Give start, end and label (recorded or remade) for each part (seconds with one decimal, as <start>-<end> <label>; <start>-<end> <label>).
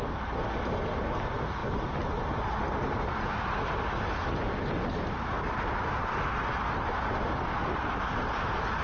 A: 0.0-8.8 recorded